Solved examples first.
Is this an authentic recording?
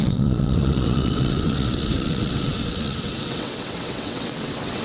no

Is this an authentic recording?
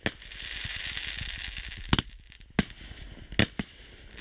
yes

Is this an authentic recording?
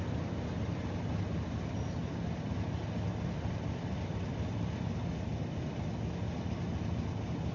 yes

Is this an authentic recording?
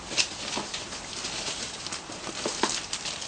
yes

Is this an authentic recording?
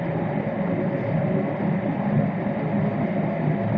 yes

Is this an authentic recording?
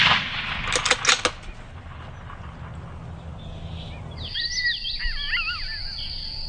yes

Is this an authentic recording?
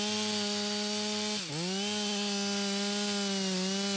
yes